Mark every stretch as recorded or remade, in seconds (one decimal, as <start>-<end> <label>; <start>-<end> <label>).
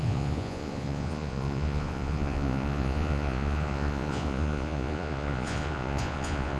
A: 0.0-6.6 remade